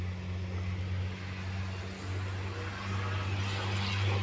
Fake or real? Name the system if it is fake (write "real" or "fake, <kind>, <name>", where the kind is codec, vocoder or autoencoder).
real